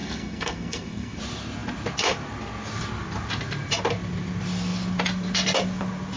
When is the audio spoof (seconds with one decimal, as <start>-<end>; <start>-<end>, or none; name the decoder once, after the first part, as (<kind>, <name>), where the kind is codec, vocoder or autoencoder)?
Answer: 0.0-1.2 (codec, SNAC)